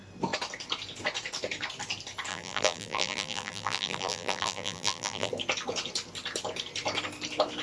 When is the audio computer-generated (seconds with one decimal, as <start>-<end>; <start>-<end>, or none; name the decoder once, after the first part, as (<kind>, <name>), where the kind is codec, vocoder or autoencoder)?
2.3-5.3 (vocoder, BigVGAN v2)